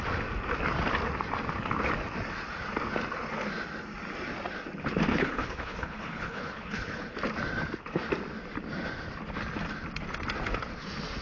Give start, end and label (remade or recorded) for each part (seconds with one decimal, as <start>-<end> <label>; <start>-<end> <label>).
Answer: 0.0-5.1 recorded; 5.1-7.1 remade; 7.1-11.2 recorded